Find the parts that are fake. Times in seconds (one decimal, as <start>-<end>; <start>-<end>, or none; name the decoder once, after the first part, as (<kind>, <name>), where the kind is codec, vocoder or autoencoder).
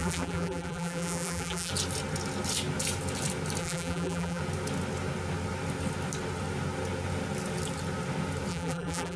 0.0-1.7 (vocoder, BigVGAN v2); 3.6-4.4; 8.5-9.2